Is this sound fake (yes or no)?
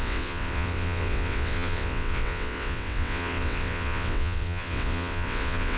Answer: yes